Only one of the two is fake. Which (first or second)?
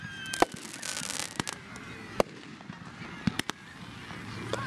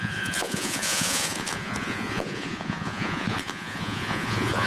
second